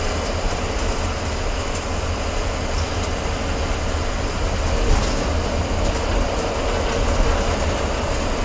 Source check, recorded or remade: recorded